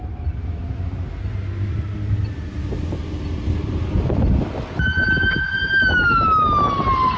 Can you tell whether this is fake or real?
real